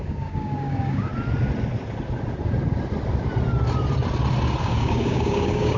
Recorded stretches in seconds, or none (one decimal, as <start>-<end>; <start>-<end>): 1.1-4.6